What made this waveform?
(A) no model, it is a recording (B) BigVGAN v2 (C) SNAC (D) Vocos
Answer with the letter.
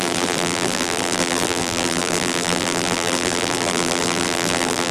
B